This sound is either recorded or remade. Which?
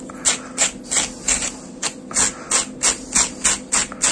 recorded